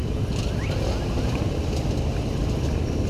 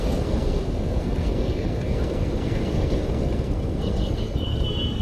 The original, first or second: first